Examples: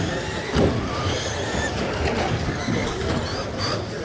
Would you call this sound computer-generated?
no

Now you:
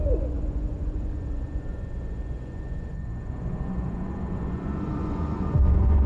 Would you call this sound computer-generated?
yes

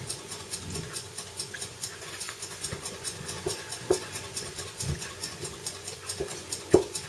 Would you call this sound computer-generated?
yes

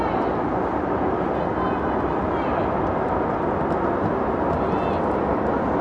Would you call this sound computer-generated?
no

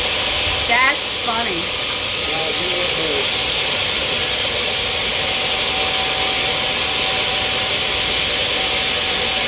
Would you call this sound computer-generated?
no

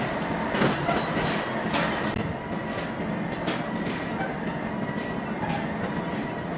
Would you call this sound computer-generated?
no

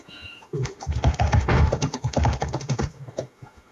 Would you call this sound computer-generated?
yes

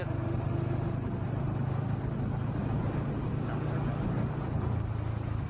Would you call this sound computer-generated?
no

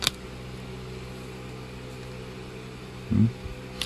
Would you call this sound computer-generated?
no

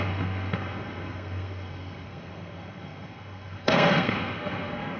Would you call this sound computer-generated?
yes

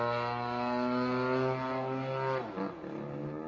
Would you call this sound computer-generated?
no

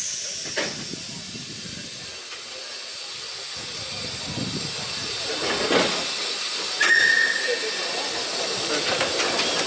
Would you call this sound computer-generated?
no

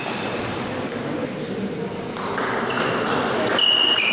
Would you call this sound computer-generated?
no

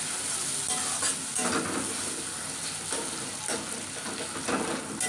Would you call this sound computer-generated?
no